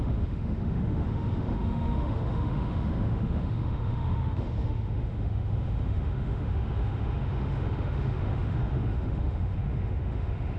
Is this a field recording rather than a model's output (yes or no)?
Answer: no